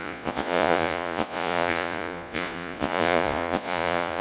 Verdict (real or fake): fake